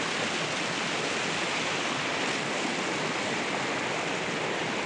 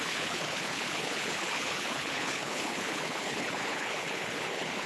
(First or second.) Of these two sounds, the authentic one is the first